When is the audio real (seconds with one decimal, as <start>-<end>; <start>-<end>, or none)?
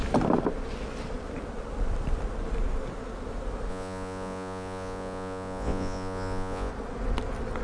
0.0-3.7; 6.7-7.6